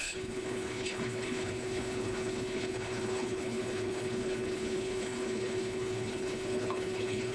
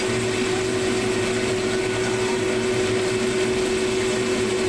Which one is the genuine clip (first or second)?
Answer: second